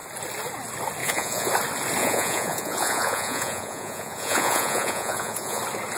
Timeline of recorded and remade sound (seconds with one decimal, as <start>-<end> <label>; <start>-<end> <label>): 0.0-1.0 recorded; 1.0-1.5 remade; 1.5-2.0 recorded; 2.0-5.6 remade; 5.6-6.0 recorded